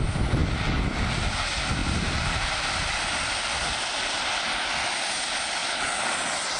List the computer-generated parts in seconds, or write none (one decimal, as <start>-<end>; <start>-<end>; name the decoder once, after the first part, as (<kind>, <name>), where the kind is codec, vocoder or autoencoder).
1.8-4.2 (vocoder, BigVGAN v2); 5.6-6.6